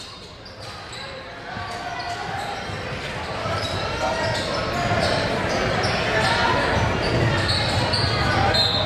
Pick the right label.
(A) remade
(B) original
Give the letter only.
B